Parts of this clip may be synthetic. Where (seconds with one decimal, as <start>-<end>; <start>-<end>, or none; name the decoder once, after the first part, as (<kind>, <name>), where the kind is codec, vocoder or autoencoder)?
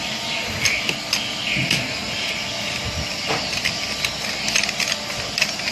none